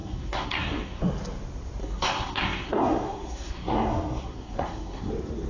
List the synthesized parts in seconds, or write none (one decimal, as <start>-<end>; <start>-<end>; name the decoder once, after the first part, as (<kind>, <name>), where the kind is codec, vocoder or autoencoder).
0.0-1.0 (codec, SNAC); 1.8-5.1